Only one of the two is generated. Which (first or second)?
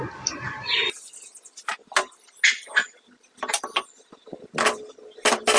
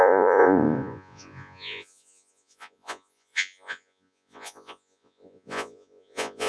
second